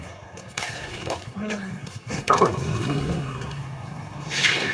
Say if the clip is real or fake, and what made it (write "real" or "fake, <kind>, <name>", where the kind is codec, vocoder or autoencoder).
fake, codec, SNAC